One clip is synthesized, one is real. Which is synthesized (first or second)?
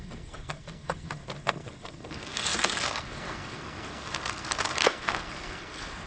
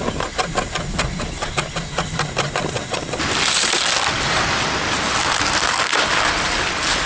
first